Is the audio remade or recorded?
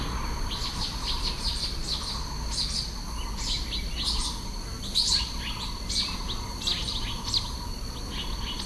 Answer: recorded